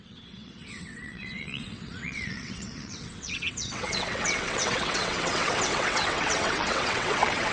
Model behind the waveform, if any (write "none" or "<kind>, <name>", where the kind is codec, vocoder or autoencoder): vocoder, WaveNeXt